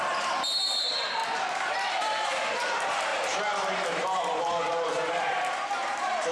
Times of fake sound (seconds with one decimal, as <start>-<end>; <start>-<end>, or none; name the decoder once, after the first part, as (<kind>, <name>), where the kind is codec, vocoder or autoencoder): 0.0-1.2 (vocoder, BigVGAN v2); 1.7-6.3

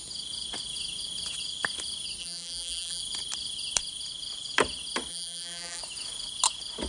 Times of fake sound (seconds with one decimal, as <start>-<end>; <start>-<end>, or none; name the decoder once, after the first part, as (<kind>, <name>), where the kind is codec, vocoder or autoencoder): 2.2-3.0 (vocoder, BigVGAN v2); 5.1-5.8

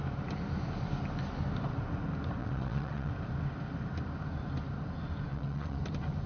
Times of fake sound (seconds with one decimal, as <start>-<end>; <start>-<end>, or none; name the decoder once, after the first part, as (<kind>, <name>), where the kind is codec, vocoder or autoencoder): 2.4-3.1 (vocoder, WaveNeXt); 5.3-5.8

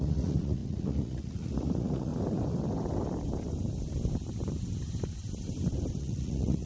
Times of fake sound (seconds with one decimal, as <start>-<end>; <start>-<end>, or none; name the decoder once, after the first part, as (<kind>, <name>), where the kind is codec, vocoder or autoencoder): 0.0-2.1 (vocoder, Vocos); 6.0-6.7